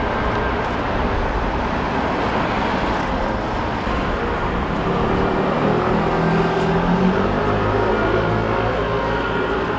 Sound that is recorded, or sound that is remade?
recorded